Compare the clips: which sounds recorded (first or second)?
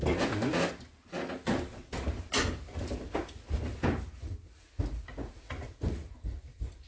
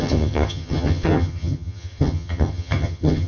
first